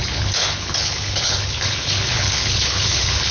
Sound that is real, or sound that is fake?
fake